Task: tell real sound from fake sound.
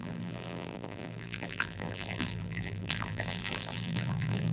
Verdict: fake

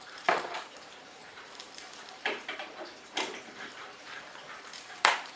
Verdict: fake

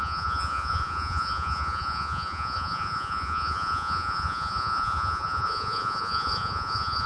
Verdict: fake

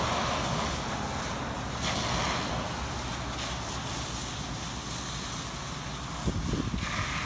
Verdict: real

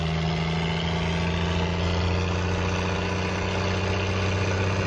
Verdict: real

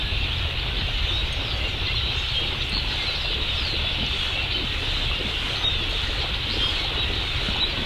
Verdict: real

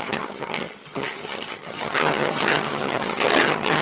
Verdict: fake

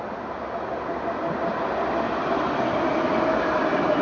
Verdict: real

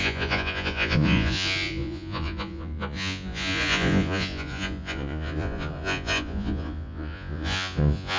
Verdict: fake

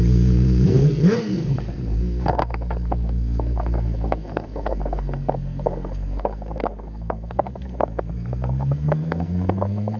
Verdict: fake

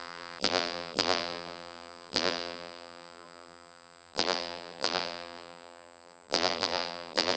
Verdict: fake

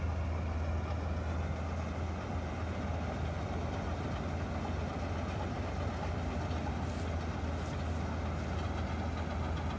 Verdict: real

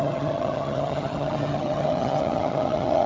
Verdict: fake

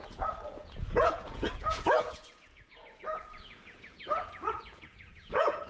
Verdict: fake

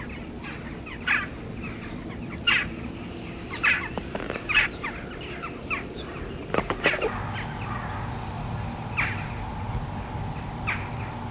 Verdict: real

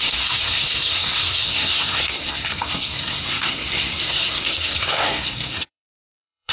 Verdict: fake